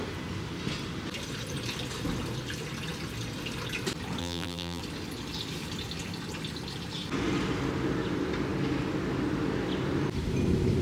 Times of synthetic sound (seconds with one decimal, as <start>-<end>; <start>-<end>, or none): 4.2-4.8